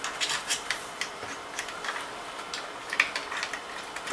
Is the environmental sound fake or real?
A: real